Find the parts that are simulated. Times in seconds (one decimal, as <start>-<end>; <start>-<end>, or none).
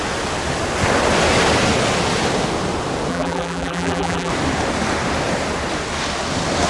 3.1-4.3